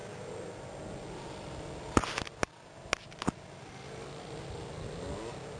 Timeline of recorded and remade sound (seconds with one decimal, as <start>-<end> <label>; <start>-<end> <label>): 0.0-5.6 recorded

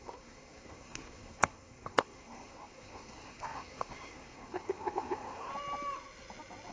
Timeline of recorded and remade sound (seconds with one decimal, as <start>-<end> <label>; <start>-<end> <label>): 0.0-5.5 remade; 5.5-6.7 recorded

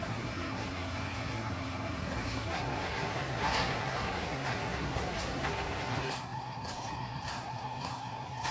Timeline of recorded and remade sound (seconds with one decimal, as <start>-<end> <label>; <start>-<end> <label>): 0.0-8.5 remade

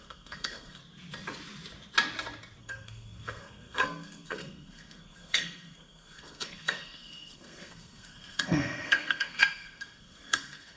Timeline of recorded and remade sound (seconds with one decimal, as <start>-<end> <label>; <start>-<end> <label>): 0.0-0.8 remade; 0.8-2.6 recorded; 2.6-10.8 remade

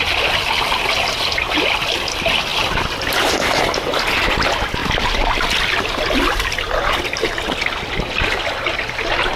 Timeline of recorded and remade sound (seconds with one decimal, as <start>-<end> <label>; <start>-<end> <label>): 0.0-9.4 recorded

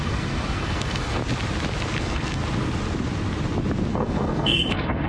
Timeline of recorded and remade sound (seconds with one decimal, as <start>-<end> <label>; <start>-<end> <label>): 0.0-1.2 remade; 1.2-2.0 recorded; 2.0-2.4 remade; 2.4-3.9 recorded; 3.9-5.1 remade

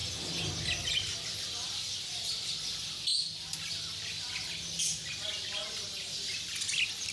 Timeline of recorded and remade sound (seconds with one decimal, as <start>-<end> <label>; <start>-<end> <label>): 0.0-7.1 recorded